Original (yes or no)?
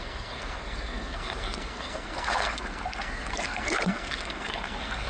no